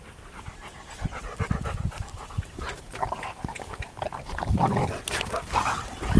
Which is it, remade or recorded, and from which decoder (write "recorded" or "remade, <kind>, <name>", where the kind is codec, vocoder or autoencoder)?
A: recorded